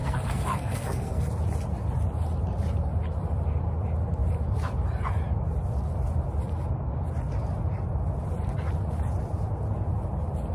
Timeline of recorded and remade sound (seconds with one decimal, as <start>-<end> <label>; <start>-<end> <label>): 0.0-1.3 remade; 1.3-10.5 recorded